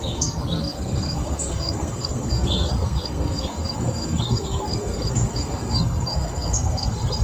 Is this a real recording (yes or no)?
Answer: no